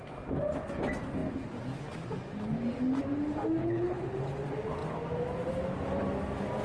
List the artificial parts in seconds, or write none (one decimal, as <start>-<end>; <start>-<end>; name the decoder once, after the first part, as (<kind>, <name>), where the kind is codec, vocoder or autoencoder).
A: 3.6-4.2 (codec, HILCodec)